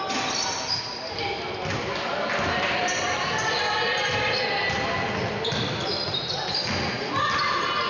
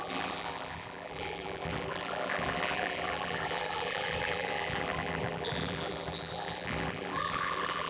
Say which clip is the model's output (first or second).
second